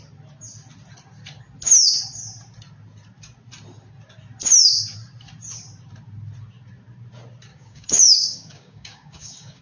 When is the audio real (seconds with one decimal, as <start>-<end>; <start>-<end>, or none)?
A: 0.0-7.5